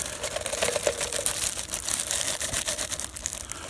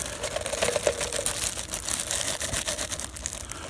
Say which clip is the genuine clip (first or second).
second